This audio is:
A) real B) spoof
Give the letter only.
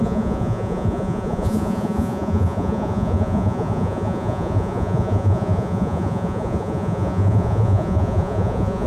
B